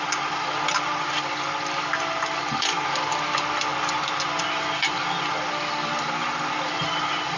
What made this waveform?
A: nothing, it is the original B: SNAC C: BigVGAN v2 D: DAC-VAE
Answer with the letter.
C